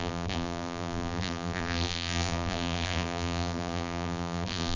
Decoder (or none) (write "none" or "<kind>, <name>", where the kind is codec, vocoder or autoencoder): vocoder, BigVGAN v2